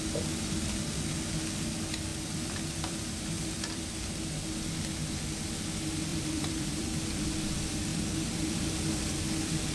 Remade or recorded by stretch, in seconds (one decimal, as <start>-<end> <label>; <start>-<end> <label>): 0.0-2.1 recorded; 2.1-3.8 remade; 3.8-6.1 recorded; 6.1-7.2 remade; 7.2-7.9 recorded; 7.9-8.7 remade; 8.7-9.7 recorded